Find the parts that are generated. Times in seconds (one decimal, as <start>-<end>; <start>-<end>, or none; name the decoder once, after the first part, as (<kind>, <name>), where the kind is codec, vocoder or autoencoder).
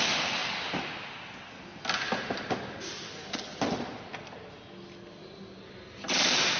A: none